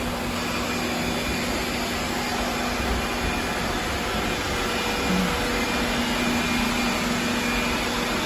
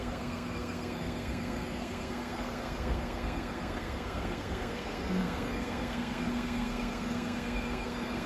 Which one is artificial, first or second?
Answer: second